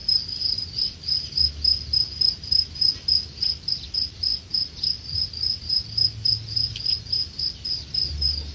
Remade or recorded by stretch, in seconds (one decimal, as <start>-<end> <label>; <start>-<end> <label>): 0.0-8.5 recorded